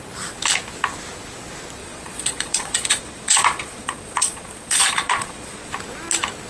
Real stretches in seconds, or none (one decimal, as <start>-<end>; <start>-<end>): 0.0-1.8; 5.7-6.5